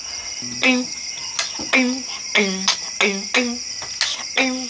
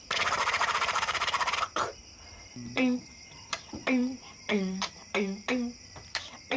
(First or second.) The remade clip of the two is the second